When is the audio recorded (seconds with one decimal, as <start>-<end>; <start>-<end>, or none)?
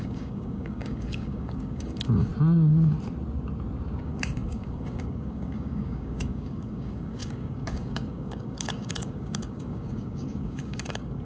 2.3-4.0